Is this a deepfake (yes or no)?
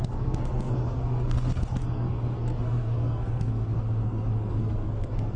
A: yes